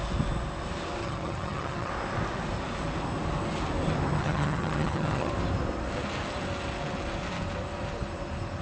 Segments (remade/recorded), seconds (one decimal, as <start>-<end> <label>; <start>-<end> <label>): 0.0-1.0 recorded; 1.0-1.9 remade; 1.9-4.2 recorded; 4.2-5.3 remade; 5.3-8.6 recorded